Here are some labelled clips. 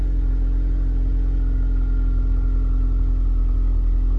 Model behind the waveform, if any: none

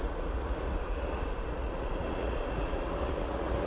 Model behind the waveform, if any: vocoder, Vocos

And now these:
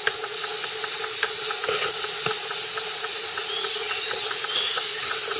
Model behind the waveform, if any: none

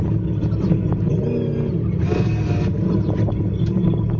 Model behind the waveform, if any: none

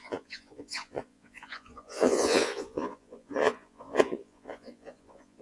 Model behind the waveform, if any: vocoder, Vocos